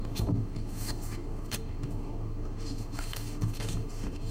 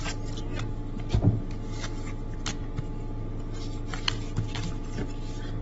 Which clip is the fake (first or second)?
first